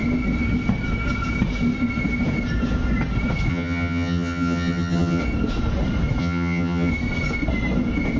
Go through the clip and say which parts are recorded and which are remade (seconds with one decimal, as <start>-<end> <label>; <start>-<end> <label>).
0.0-3.5 recorded; 3.5-5.2 remade; 5.2-6.2 recorded; 6.2-6.9 remade; 6.9-8.2 recorded